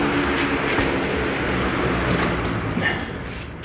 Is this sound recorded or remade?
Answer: recorded